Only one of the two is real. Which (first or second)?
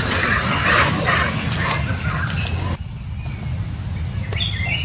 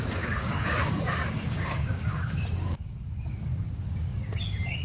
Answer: first